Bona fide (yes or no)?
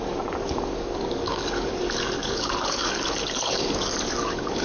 no